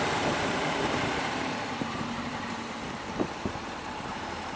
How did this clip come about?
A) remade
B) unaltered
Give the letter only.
A